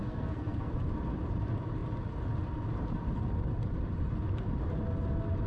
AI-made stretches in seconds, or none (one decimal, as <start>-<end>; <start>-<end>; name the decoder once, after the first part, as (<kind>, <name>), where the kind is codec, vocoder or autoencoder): 0.0-0.8 (codec, SNAC)